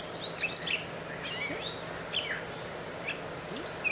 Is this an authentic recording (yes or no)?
yes